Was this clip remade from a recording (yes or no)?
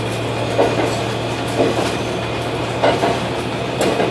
no